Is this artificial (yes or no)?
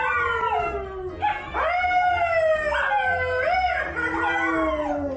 no